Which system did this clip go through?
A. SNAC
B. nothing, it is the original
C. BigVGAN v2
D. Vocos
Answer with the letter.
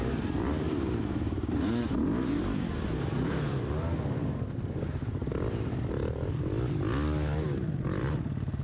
C